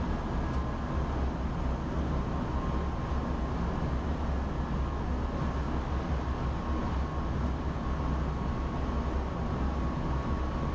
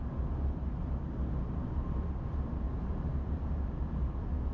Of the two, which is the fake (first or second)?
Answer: second